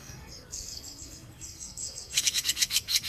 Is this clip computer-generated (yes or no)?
yes